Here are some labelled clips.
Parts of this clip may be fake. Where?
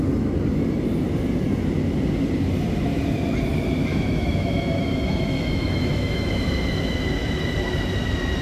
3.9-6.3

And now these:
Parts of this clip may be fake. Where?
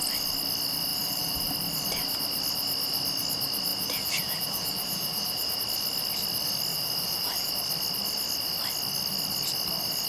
0.9-1.5; 3.7-5.6; 6.7-7.5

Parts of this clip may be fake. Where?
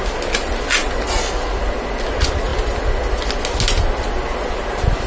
none